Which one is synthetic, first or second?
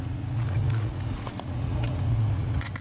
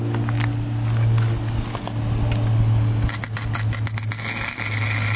first